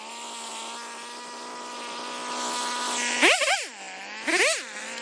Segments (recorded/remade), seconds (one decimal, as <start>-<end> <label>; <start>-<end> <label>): 0.0-5.0 recorded